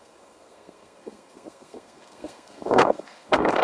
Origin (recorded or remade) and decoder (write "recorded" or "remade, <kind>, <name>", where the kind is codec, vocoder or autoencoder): remade, codec, SNAC